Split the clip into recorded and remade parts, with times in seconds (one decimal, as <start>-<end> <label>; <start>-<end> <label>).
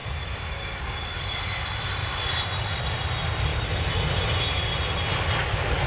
0.0-0.5 remade; 0.5-2.0 recorded; 2.0-2.6 remade; 2.6-5.9 recorded